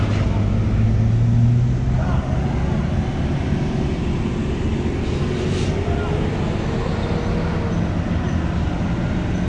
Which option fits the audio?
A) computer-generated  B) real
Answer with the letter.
B